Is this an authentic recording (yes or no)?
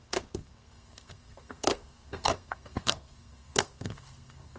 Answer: no